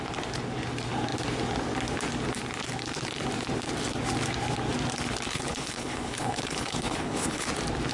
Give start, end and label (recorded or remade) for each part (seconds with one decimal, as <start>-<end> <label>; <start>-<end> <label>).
0.0-5.3 recorded; 5.3-7.5 remade; 7.5-7.9 recorded